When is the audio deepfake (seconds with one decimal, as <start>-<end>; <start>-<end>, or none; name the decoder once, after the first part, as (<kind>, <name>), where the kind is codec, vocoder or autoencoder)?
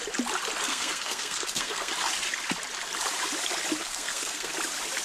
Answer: 0.7-1.9 (codec, SNAC); 3.8-4.5